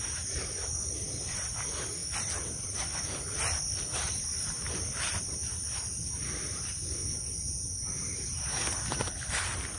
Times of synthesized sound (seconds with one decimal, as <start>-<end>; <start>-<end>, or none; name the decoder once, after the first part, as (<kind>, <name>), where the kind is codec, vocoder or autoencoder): none